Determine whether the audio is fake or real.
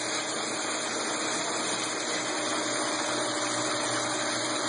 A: real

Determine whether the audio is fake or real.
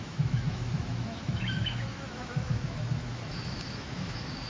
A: fake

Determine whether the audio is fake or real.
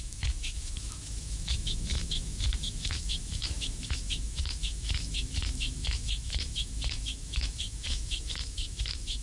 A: fake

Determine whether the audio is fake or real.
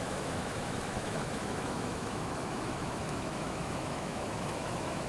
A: fake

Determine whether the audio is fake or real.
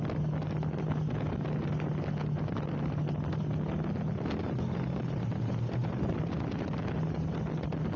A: real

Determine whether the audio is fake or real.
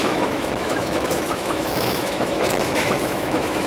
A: fake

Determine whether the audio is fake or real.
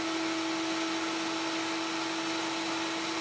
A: real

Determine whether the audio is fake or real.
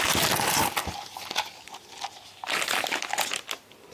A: real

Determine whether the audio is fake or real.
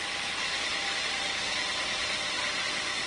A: real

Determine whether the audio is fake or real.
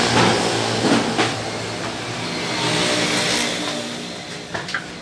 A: real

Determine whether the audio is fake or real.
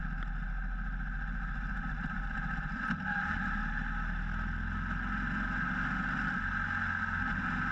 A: real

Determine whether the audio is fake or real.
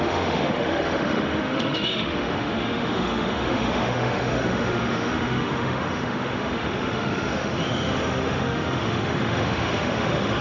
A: fake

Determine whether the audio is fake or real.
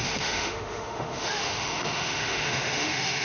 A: fake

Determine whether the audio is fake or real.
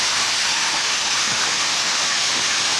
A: fake